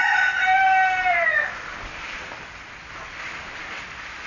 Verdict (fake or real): real